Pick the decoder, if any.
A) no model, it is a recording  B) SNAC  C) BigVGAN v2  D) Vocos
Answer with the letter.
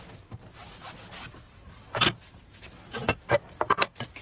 A